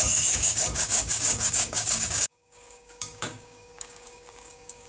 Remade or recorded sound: remade